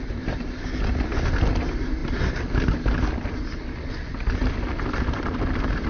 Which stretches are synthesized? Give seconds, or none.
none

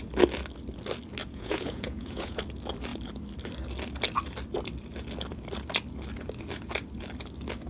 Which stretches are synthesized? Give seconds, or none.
1.2-2.4

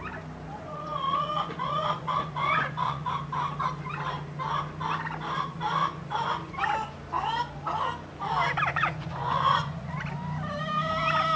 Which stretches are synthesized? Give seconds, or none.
0.5-3.1; 5.8-6.6; 8.7-9.9

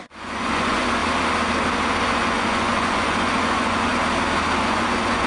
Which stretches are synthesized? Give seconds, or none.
0.0-1.0; 2.0-3.9; 4.6-5.3